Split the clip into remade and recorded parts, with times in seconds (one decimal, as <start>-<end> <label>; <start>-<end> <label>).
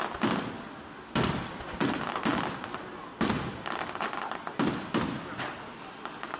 0.0-6.4 recorded